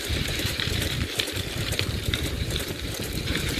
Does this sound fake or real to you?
fake